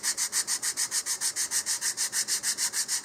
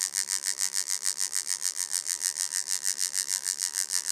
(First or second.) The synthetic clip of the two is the second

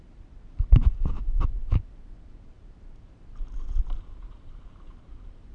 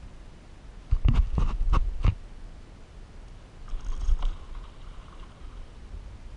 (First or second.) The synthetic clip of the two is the first